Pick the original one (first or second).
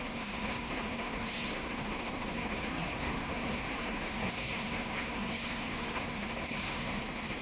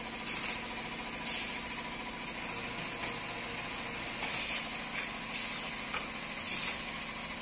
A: second